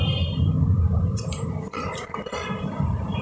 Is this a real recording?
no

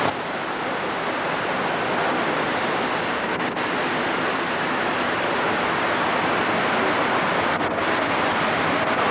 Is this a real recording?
yes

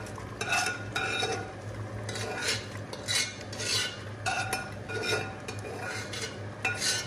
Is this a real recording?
yes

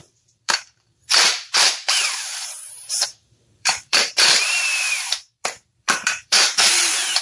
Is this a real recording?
no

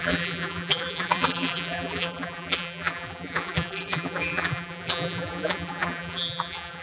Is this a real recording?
no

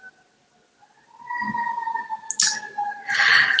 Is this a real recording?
yes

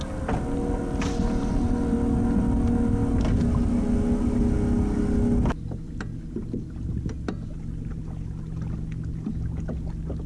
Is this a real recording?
yes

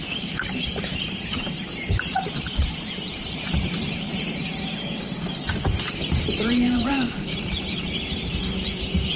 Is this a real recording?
no